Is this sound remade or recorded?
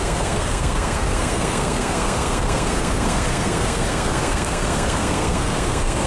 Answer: remade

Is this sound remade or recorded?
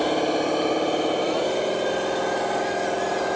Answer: recorded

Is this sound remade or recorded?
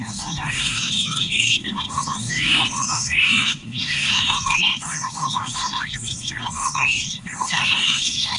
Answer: remade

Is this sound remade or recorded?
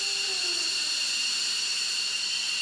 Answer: recorded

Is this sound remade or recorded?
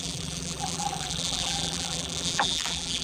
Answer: remade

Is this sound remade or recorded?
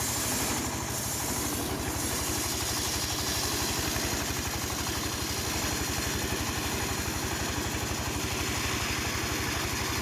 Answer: recorded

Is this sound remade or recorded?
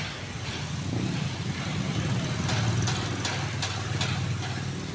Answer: recorded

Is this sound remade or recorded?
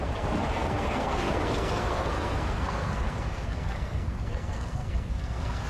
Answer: remade